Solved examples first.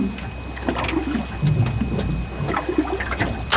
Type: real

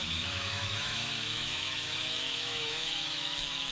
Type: fake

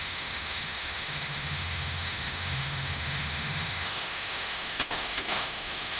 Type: fake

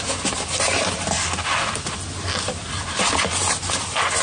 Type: real